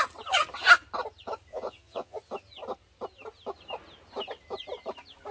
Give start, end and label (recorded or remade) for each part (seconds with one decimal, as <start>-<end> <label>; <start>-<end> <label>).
0.0-1.5 recorded; 1.5-2.2 remade; 2.2-5.3 recorded